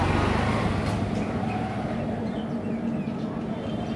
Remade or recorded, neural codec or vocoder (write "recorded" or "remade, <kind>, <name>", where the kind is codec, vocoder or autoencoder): recorded